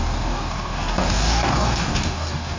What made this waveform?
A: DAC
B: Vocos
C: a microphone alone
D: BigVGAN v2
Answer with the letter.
A